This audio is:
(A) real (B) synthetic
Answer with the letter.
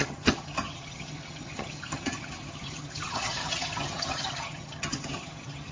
B